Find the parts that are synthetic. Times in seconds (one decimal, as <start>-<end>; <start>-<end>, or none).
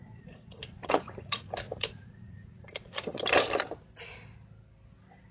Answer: 0.0-3.2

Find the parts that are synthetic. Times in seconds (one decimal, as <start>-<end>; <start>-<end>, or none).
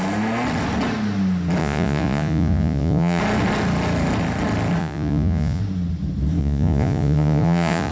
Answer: 1.6-3.2; 4.8-5.6; 6.4-7.9